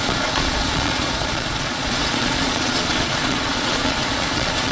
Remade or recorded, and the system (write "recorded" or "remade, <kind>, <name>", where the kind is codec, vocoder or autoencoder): remade, vocoder, Vocos